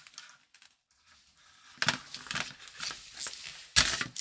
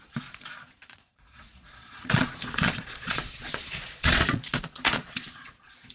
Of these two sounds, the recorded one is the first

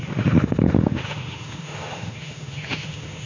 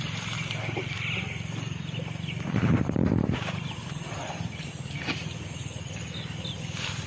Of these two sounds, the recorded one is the second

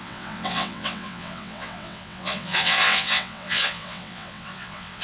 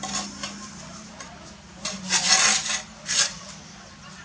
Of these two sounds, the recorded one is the second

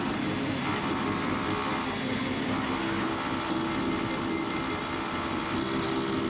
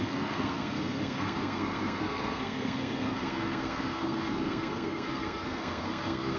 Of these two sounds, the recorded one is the first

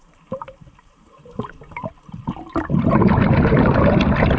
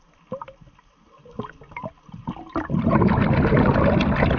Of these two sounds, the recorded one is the second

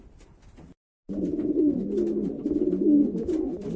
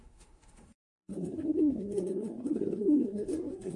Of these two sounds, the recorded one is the first